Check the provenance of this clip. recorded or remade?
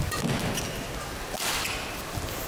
recorded